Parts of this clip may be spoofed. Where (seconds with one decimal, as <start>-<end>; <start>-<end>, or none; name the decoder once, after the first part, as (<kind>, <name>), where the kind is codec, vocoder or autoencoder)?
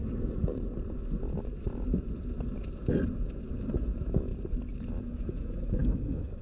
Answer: 3.8-4.3 (autoencoder, DAC-VAE); 5.0-6.4